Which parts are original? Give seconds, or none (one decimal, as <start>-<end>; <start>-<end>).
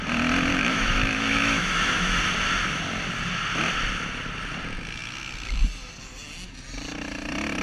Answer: 0.0-0.5; 2.2-7.6